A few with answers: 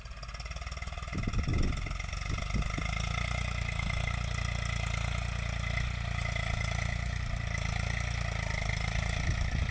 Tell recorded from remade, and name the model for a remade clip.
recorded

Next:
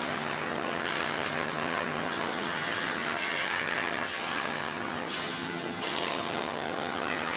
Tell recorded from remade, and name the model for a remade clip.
remade, vocoder, HiFi-GAN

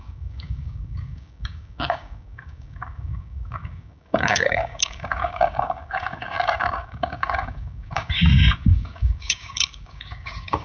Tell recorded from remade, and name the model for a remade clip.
remade, codec, DAC